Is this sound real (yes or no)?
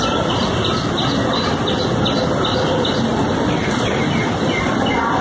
yes